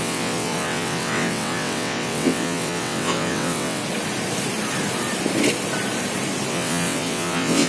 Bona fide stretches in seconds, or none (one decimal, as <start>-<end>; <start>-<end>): 3.8-6.5